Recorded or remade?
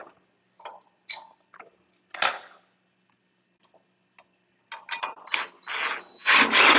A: recorded